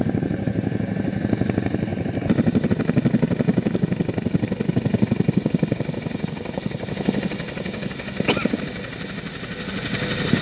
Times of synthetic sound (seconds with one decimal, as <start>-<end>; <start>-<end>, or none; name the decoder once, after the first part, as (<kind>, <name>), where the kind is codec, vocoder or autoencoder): 1.9-2.7 (vocoder, BigVGAN v2); 3.5-4.7